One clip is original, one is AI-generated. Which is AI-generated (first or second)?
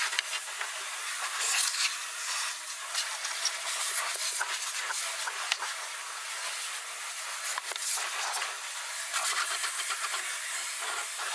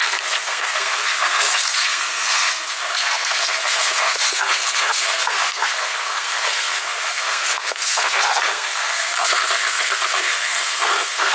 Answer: second